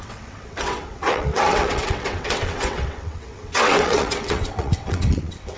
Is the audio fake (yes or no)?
yes